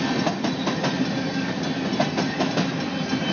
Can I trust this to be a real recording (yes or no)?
yes